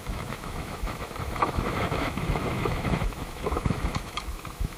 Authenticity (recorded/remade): remade